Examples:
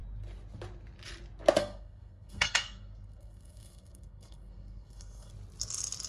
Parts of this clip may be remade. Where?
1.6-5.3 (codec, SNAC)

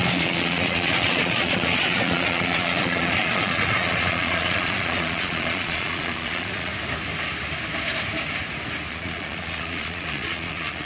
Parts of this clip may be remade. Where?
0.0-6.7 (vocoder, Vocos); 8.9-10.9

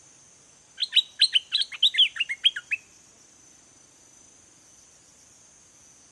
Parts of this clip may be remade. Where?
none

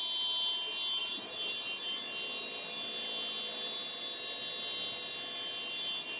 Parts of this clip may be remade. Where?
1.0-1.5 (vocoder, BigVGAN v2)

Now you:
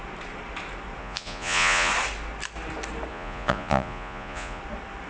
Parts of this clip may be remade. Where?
1.0-1.9 (vocoder, Vocos); 3.1-4.6

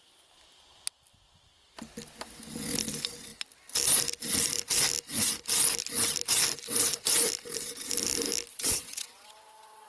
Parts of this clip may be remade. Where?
8.5-9.9 (vocoder, Vocos)